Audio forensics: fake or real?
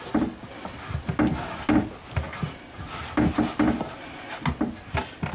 real